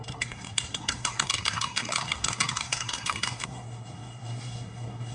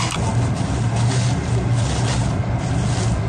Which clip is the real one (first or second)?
second